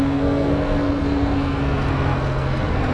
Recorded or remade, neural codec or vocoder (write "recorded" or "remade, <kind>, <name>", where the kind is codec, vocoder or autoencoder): remade, codec, SNAC